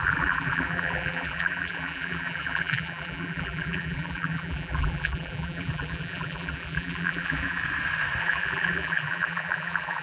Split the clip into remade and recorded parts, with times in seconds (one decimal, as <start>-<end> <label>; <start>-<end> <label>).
0.0-7.6 remade; 7.6-8.2 recorded; 8.2-10.0 remade